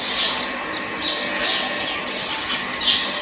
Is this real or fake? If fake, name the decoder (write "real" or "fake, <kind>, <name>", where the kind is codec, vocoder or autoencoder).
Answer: real